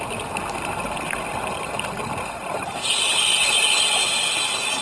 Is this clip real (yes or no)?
yes